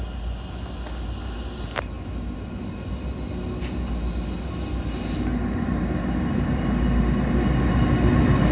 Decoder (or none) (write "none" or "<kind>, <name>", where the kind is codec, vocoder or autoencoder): none